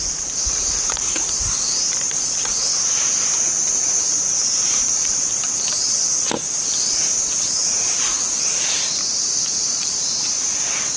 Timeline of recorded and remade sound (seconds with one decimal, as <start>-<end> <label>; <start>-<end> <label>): 0.0-2.7 remade; 2.7-4.0 recorded; 4.0-11.0 remade